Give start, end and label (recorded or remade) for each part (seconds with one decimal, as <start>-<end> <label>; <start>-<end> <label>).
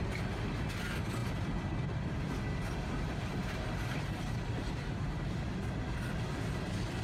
0.0-3.3 recorded; 3.3-5.6 remade; 5.6-7.0 recorded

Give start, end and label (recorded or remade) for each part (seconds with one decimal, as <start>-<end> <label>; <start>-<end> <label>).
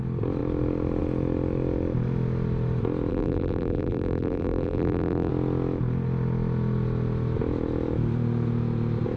0.0-3.1 recorded; 3.1-5.3 remade; 5.3-9.2 recorded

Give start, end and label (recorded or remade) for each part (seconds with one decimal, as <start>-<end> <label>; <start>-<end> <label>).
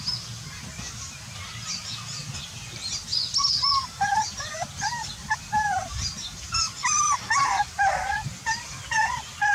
0.0-9.5 recorded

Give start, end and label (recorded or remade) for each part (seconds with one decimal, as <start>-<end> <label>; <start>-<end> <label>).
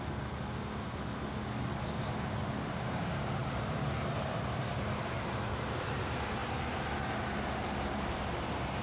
0.0-3.4 recorded; 3.4-6.0 remade; 6.0-8.8 recorded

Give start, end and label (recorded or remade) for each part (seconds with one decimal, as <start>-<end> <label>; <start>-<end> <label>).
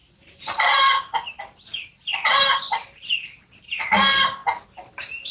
0.0-2.1 remade; 2.1-2.6 recorded; 2.6-4.4 remade; 4.4-5.3 recorded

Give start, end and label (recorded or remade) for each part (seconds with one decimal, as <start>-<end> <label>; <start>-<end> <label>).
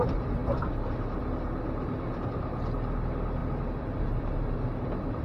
0.0-5.2 recorded